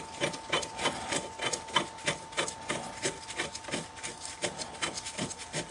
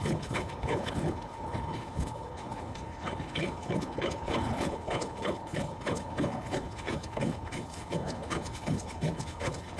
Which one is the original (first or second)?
first